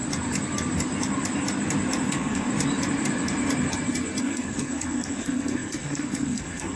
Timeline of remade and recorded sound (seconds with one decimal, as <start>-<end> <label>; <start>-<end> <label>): 0.0-2.1 recorded; 2.1-2.5 remade; 2.5-4.2 recorded; 4.2-6.8 remade